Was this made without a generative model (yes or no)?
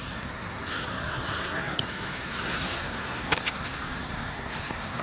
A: no